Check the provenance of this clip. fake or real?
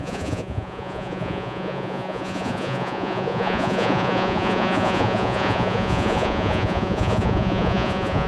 fake